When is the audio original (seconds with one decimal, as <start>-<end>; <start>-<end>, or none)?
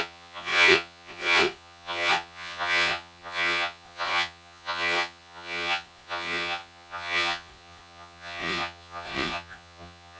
none